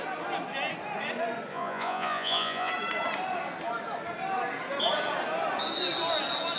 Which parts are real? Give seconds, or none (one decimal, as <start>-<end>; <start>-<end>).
0.0-1.5; 2.7-6.6